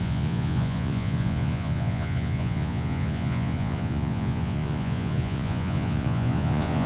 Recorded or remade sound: remade